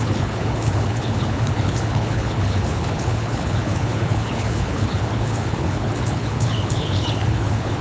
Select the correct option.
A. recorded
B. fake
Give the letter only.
B